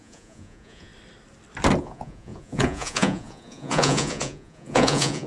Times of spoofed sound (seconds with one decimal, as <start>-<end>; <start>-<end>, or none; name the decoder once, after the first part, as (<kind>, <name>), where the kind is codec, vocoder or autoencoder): 0.0-0.9 (vocoder, Vocos); 1.8-5.3

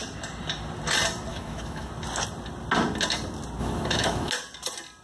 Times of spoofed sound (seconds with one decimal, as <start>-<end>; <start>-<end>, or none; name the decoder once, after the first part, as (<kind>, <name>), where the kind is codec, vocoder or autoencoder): 1.3-1.9 (autoencoder, DAC-VAE); 3.6-4.3